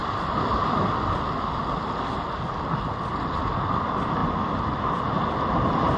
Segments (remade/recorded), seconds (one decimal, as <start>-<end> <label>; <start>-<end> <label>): 0.0-6.0 recorded